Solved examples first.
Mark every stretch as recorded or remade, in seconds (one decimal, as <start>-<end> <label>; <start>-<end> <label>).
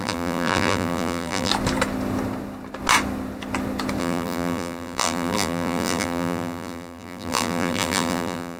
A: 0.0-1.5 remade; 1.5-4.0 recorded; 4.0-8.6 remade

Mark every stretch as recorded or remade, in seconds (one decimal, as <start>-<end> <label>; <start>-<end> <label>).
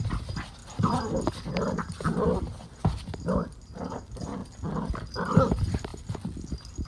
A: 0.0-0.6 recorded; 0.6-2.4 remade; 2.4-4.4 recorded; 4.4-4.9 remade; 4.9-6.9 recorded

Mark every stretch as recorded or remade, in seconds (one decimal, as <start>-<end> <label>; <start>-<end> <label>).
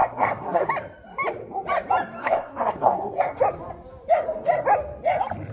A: 0.0-0.7 remade; 0.7-2.2 recorded; 2.2-3.4 remade; 3.4-5.5 recorded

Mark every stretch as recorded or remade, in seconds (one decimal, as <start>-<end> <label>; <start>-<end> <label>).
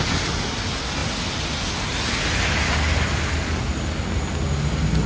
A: 0.0-5.1 recorded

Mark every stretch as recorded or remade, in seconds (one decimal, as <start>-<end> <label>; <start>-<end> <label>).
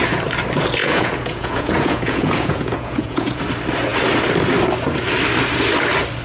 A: 0.0-0.8 recorded; 0.8-3.4 remade; 3.4-6.2 recorded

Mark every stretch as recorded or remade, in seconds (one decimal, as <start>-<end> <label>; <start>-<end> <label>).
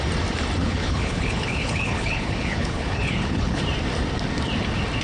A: 0.0-0.6 recorded; 0.6-3.6 remade; 3.6-5.0 recorded